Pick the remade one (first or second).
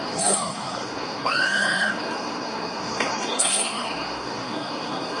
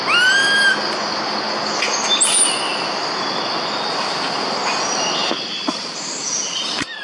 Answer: first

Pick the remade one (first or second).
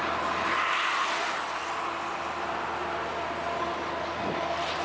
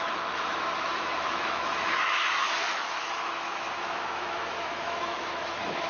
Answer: second